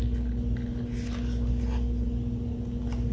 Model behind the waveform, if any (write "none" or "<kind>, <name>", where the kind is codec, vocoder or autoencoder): none